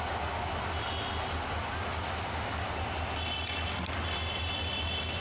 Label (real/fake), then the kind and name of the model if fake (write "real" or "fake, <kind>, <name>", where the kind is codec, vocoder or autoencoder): real